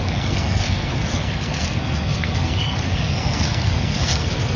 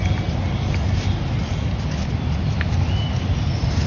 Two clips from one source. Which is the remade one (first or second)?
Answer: first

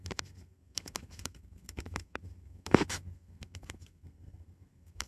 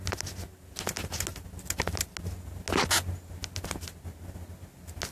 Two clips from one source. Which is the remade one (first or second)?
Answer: first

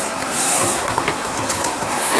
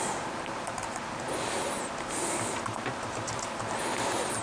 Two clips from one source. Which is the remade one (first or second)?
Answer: first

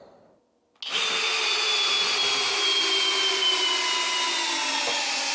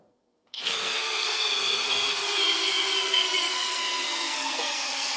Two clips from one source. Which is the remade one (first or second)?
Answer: second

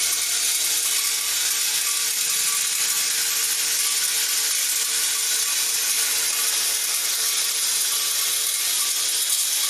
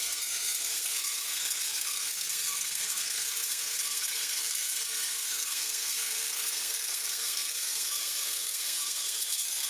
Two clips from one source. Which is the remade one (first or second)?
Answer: second